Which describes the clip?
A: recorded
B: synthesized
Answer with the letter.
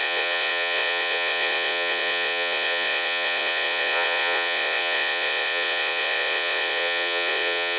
B